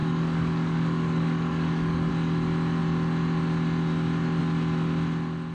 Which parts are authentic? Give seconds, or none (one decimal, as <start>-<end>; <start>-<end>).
2.1-5.5